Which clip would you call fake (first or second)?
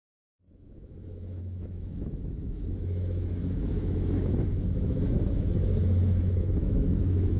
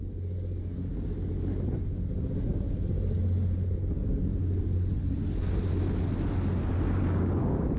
first